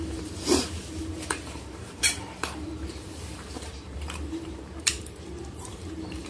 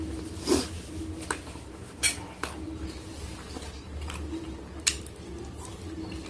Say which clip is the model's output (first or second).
first